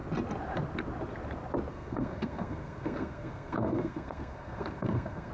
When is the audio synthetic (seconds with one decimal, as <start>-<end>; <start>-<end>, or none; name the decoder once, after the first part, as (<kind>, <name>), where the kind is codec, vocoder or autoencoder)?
1.7-5.3 (codec, SNAC)